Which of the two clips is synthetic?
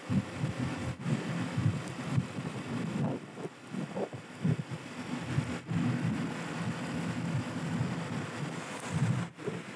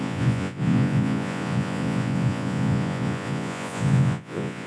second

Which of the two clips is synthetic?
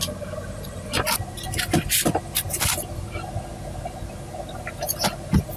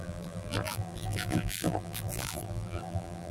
second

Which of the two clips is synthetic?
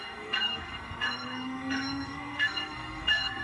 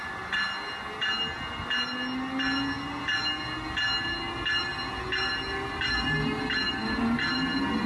first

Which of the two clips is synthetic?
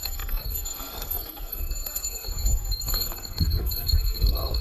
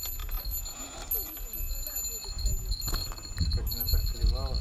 first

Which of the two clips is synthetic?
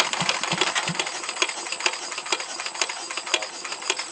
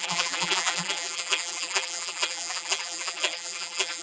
second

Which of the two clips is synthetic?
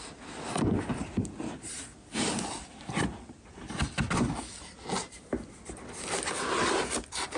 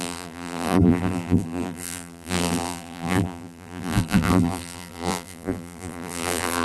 second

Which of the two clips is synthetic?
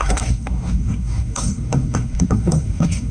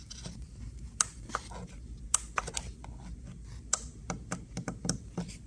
first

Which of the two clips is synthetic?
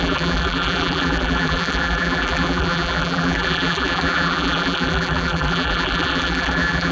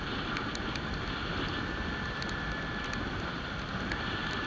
first